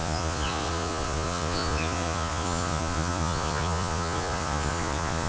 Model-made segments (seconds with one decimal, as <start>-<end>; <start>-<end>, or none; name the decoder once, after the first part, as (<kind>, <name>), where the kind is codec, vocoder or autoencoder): 0.0-5.3 (vocoder, Vocos)

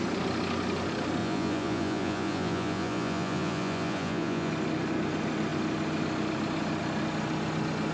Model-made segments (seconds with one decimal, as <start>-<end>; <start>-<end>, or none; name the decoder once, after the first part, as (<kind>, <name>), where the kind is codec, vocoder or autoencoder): 1.2-4.5 (vocoder, Vocos)